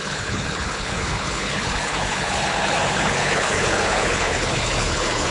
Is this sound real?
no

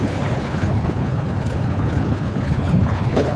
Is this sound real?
no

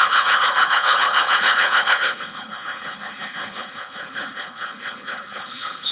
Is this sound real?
no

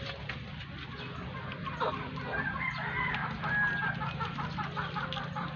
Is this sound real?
yes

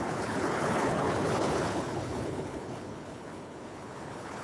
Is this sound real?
no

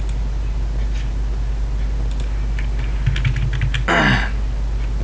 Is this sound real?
yes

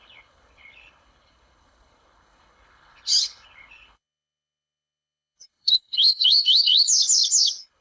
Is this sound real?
no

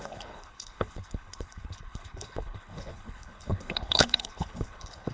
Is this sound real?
no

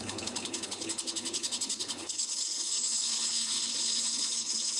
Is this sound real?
no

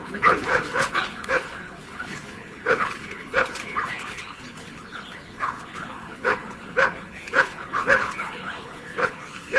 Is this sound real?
no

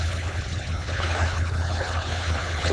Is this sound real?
no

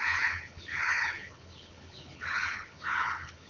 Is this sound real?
no